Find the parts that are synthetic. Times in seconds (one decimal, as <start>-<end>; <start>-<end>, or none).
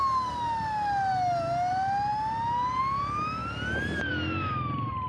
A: none